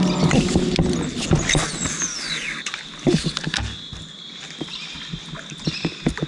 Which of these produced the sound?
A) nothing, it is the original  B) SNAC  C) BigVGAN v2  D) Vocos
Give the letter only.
A